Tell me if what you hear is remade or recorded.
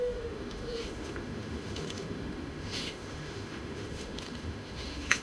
remade